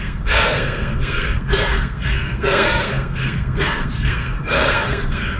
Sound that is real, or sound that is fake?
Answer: fake